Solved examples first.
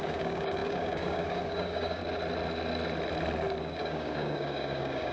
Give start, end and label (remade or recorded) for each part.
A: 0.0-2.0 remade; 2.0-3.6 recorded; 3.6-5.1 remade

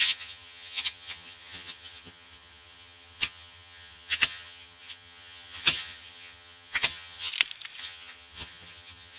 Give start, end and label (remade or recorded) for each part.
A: 0.0-7.3 remade; 7.3-7.8 recorded; 7.8-9.2 remade

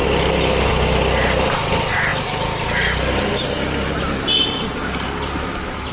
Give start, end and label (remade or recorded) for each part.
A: 0.0-5.9 recorded